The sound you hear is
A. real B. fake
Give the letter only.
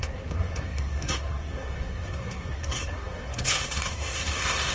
B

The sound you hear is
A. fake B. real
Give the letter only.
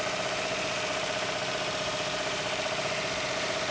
A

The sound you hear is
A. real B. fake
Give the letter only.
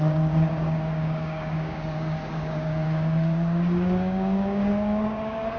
B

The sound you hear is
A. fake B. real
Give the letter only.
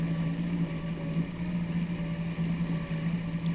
B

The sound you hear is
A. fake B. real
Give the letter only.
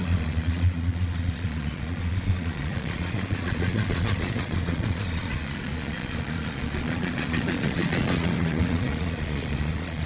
A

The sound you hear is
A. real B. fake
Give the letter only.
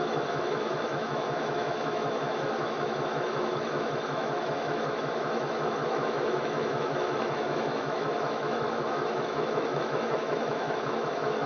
B